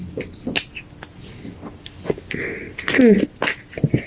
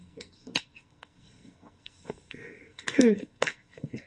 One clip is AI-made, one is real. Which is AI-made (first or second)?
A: second